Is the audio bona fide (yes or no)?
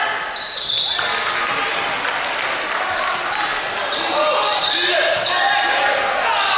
yes